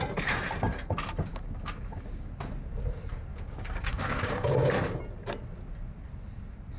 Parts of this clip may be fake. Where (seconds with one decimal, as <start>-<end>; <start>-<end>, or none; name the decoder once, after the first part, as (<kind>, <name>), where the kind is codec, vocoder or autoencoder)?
1.3-2.3 (codec, DAC); 3.3-4.5